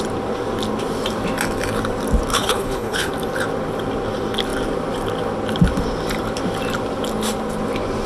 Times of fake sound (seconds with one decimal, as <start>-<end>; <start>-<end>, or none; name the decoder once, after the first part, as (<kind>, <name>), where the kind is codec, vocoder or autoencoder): 2.3-3.1 (codec, HILCodec)